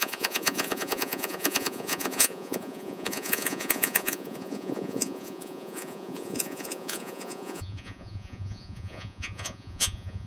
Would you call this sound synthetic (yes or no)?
yes